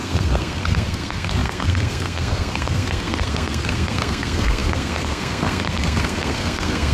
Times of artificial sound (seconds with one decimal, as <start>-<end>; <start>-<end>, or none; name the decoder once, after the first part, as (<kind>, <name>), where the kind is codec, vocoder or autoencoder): 0.0-6.9 (codec, SNAC)